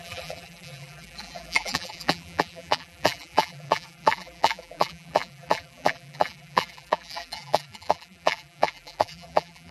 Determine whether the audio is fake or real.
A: fake